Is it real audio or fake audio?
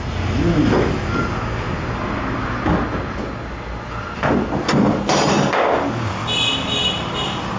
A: real